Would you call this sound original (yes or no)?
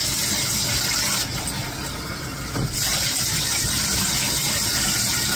yes